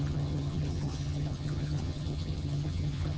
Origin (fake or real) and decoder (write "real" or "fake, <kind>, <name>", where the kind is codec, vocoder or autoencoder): fake, vocoder, HiFi-GAN